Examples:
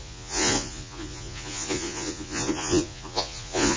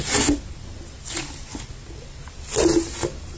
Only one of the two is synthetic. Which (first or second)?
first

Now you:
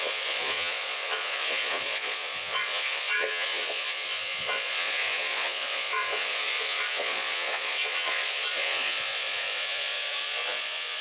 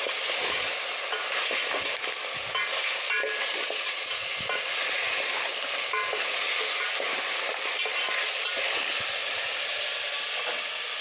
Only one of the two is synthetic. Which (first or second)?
first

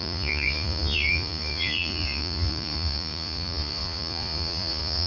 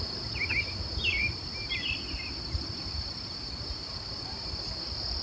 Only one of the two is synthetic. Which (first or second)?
first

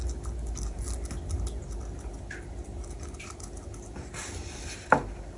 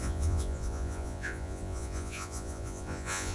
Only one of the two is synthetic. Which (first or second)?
second